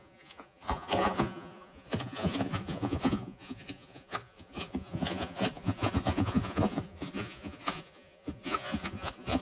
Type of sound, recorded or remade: remade